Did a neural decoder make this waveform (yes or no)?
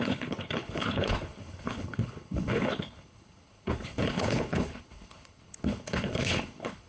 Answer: yes